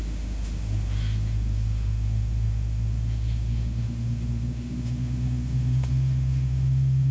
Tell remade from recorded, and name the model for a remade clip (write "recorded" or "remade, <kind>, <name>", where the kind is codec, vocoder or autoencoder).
remade, autoencoder, DAC-VAE